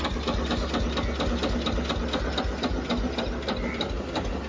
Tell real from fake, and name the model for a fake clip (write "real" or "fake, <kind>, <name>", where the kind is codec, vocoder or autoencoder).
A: real